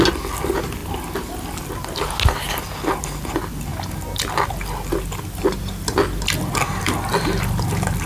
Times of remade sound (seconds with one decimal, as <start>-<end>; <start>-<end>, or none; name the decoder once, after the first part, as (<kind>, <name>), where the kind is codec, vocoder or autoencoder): none